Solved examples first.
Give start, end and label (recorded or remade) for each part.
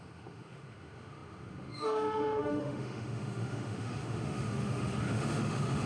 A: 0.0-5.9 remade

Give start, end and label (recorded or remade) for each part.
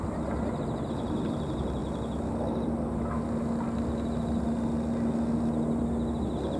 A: 0.0-6.6 recorded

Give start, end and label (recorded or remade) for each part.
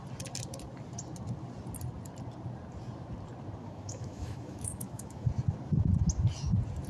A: 0.0-3.6 recorded; 3.6-5.3 remade; 5.3-6.9 recorded